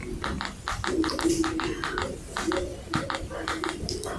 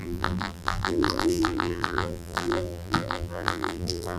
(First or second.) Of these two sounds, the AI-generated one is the second